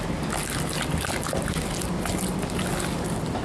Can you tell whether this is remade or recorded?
recorded